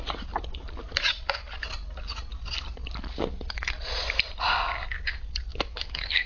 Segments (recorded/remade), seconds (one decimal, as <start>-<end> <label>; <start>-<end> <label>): 0.0-5.5 recorded; 5.5-6.3 remade